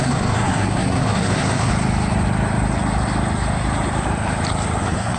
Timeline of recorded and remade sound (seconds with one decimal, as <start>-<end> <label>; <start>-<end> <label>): 0.0-1.7 remade; 1.7-4.8 recorded; 4.8-5.2 remade

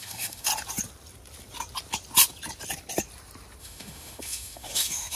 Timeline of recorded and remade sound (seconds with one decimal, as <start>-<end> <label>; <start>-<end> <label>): 0.0-0.5 remade; 0.5-3.6 recorded; 3.6-5.2 remade

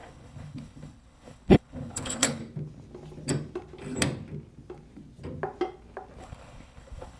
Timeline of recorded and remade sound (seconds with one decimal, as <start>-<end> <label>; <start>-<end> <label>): 0.0-2.4 remade; 2.4-6.2 recorded; 6.2-7.2 remade

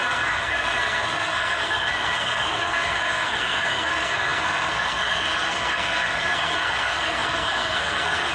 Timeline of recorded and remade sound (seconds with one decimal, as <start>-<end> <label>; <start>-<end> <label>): 0.0-8.3 remade

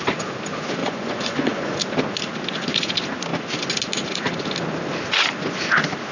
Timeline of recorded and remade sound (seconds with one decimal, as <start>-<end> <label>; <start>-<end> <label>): 0.0-0.8 recorded; 0.8-1.8 remade; 1.8-6.1 recorded

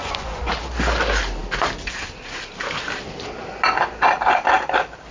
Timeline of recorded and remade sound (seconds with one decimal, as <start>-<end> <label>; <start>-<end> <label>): 0.0-0.5 remade; 0.5-5.1 recorded

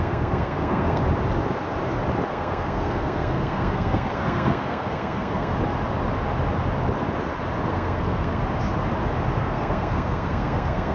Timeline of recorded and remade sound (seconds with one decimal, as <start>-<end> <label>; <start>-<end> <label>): 0.0-1.0 remade; 1.0-2.3 recorded; 2.3-5.5 remade; 5.5-7.7 recorded; 7.7-8.4 remade; 8.4-9.4 recorded; 9.4-10.9 remade

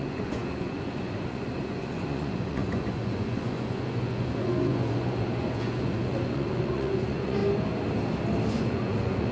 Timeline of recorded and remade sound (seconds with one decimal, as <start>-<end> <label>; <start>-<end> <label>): 0.0-7.4 remade; 7.4-8.5 recorded; 8.5-9.3 remade